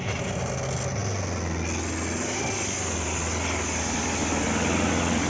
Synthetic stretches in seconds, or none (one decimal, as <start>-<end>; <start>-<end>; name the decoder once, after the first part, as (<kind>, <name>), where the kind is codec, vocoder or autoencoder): none